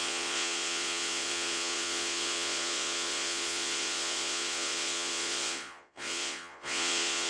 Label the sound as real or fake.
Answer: fake